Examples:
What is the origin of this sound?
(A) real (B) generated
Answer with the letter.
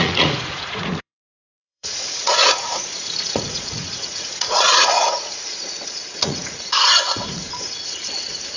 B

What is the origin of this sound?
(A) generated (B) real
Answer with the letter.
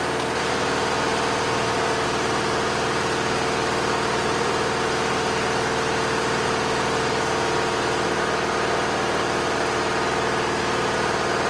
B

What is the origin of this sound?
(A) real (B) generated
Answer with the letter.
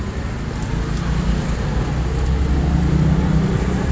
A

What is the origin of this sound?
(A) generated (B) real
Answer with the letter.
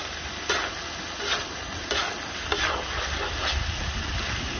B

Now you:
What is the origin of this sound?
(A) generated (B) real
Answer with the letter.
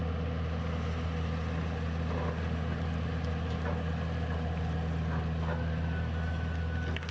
B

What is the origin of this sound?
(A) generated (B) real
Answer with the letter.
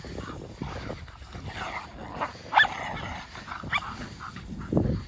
B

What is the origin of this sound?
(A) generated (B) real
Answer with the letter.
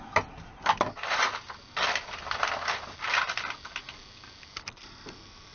B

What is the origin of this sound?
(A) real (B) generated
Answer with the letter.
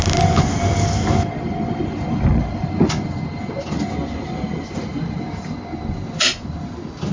A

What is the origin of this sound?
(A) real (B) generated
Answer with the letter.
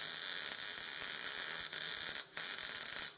A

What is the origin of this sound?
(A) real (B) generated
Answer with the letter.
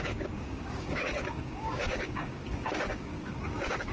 B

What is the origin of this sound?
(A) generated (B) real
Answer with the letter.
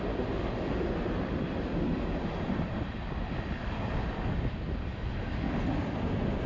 A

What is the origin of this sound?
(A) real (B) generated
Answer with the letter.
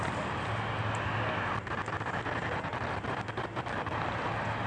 A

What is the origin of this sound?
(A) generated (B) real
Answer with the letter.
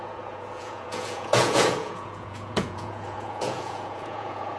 A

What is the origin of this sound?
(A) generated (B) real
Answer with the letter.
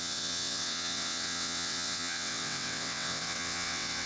A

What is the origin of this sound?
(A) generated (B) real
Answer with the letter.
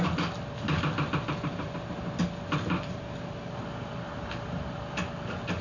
B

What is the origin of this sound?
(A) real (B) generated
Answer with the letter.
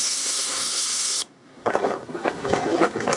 B